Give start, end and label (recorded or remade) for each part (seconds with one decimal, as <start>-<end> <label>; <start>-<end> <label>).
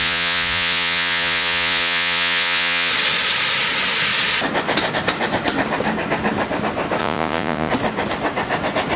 0.0-2.9 remade; 2.9-7.0 recorded; 7.0-7.7 remade; 7.7-9.0 recorded